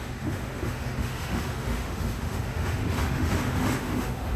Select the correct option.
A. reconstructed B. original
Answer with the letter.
A